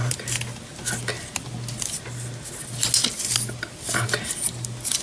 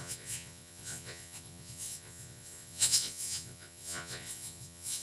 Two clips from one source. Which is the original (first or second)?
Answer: first